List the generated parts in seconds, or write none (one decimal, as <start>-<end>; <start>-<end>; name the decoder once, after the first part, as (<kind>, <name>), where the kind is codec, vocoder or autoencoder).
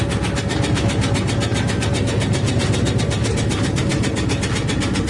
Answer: none